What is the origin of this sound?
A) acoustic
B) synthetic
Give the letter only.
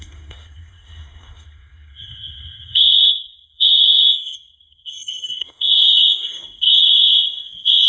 B